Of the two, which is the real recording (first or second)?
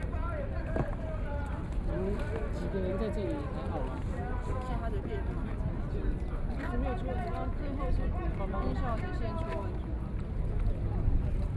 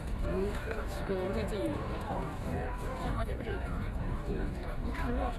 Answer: first